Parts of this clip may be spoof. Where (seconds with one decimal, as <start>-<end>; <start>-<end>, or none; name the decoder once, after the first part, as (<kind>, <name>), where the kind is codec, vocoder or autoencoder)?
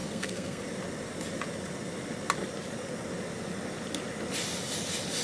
0.0-0.6 (codec, SNAC)